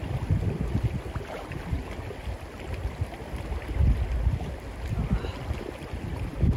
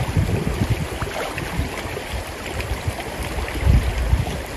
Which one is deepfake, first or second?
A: second